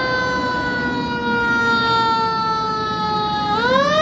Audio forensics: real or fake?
real